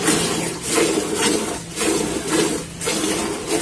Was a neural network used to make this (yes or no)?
no